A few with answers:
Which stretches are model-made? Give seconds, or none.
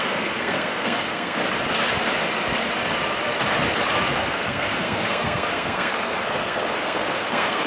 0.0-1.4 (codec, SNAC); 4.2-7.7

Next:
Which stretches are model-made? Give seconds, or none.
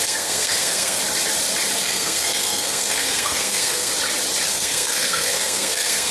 0.0-1.0 (codec, SNAC); 1.8-3.9; 4.5-6.1